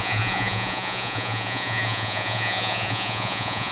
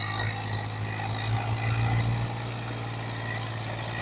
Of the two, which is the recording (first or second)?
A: second